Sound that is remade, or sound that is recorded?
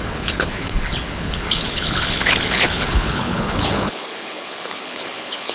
remade